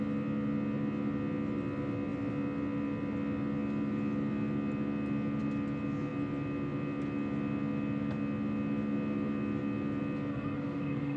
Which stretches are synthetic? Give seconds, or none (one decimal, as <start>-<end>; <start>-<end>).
10.3-11.2